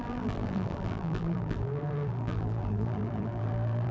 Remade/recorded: remade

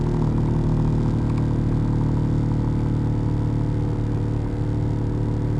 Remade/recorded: recorded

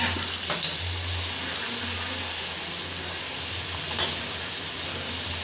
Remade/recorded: recorded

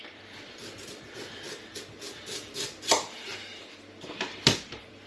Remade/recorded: remade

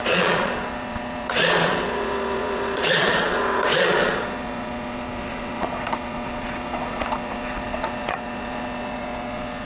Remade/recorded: remade